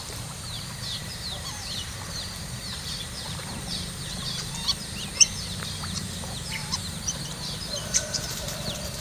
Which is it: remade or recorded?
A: remade